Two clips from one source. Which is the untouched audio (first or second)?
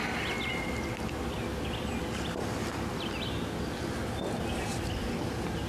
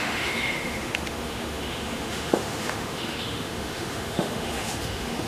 first